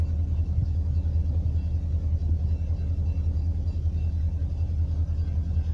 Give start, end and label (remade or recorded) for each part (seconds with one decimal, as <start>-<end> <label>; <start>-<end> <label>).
0.0-5.7 recorded